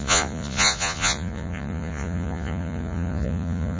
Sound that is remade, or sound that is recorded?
remade